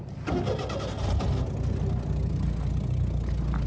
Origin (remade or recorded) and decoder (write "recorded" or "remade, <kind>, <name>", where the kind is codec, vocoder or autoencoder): recorded